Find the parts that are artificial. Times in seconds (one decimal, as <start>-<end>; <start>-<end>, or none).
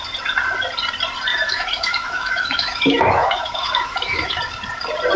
1.3-4.4